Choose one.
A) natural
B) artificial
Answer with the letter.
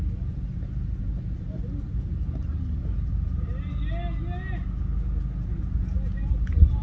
A